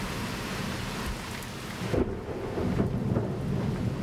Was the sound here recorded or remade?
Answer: recorded